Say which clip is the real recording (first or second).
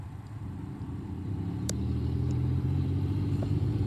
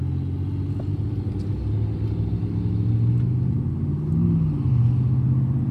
second